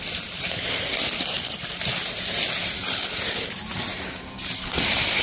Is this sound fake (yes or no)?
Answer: no